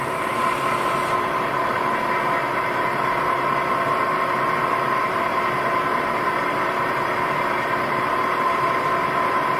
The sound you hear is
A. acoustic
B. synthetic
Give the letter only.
B